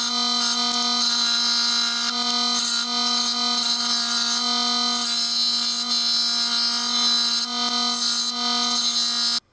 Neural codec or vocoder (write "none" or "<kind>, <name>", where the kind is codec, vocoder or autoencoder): none